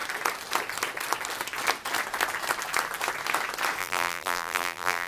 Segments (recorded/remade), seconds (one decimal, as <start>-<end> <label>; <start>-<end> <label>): 0.0-3.8 recorded; 3.8-5.1 remade